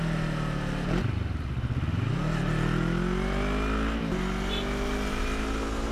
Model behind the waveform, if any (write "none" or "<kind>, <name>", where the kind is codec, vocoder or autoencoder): none